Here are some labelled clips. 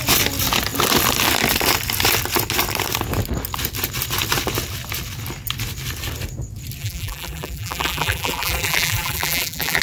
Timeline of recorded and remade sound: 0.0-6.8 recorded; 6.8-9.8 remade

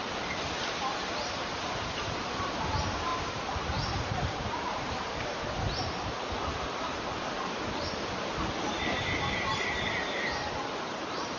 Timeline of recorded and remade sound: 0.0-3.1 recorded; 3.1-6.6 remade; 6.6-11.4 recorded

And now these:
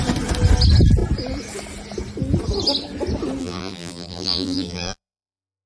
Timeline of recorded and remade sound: 0.0-3.4 recorded; 3.4-5.7 remade

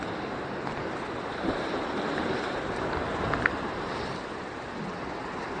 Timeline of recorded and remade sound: 0.0-1.3 recorded; 1.3-4.7 remade; 4.7-5.6 recorded

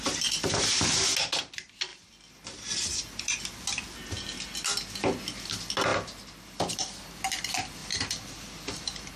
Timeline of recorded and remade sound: 0.0-1.9 recorded; 1.9-3.4 remade; 3.4-5.9 recorded; 5.9-7.0 remade; 7.0-7.8 recorded; 7.8-9.2 remade

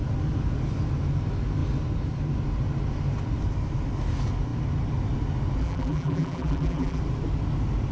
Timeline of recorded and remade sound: 0.0-5.6 recorded; 5.6-7.0 remade; 7.0-7.9 recorded

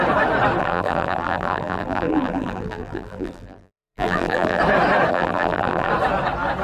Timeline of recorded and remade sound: 0.0-0.6 recorded; 0.6-4.6 remade; 4.6-5.1 recorded; 5.1-5.9 remade; 5.9-6.6 recorded

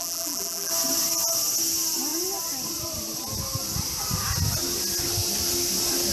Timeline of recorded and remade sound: 0.0-0.7 remade; 0.7-6.1 recorded